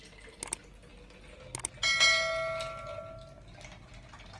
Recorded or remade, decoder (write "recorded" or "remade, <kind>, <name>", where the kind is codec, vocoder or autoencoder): recorded